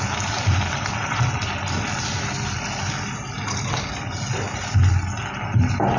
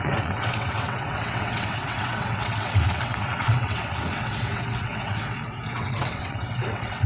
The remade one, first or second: second